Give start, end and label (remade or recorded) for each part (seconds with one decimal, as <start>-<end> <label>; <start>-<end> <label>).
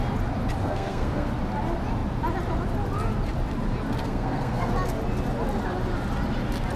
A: 0.0-0.6 recorded; 0.6-1.3 remade; 1.3-4.0 recorded; 4.0-4.7 remade; 4.7-6.8 recorded